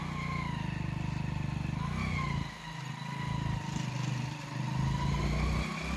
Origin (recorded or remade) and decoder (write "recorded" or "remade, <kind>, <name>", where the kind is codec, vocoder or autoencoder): recorded